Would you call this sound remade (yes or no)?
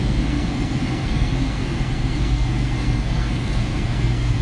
yes